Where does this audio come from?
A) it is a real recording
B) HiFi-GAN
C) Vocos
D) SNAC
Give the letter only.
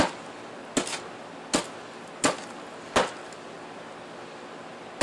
A